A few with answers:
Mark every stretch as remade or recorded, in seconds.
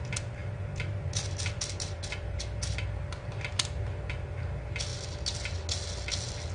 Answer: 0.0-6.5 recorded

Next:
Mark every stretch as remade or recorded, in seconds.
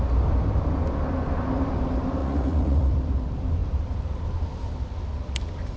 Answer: 0.0-2.2 recorded; 2.2-2.9 remade; 2.9-5.8 recorded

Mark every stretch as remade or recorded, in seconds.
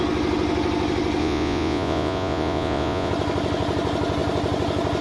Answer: 0.0-1.2 recorded; 1.2-3.1 remade; 3.1-5.0 recorded